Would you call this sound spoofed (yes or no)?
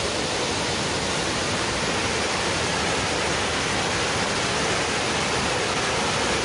no